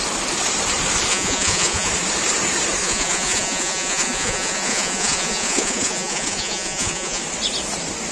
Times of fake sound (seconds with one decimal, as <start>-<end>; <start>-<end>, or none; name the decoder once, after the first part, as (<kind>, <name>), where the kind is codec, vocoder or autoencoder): 1.1-1.9 (vocoder, Vocos); 2.8-7.2